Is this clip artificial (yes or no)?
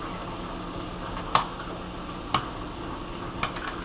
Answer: no